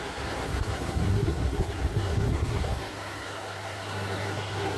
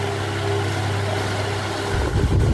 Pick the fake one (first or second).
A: first